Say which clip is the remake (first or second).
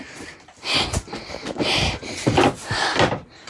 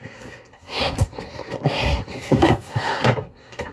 second